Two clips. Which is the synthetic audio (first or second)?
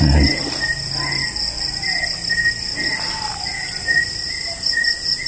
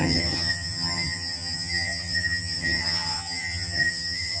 second